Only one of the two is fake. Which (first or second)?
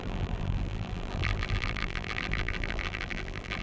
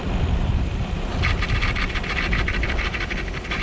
first